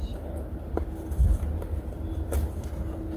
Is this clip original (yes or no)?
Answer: yes